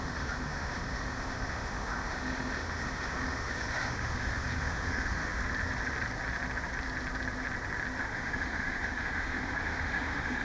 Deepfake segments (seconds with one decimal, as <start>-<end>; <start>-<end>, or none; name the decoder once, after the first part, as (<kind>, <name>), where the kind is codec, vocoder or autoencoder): 0.0-5.4 (autoencoder, DAC-VAE); 8.0-10.4